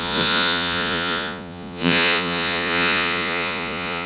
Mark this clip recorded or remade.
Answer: remade